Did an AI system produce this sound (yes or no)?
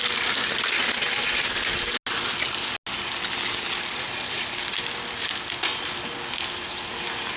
no